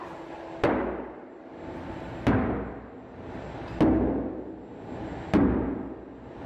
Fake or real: real